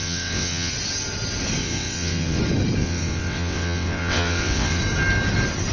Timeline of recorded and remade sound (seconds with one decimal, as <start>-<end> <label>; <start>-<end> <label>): 0.0-0.7 remade; 0.7-1.6 recorded; 1.6-2.4 remade; 2.4-2.8 recorded; 2.8-4.8 remade; 4.8-5.7 recorded